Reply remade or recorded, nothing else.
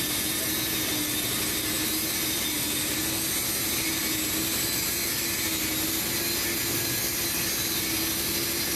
recorded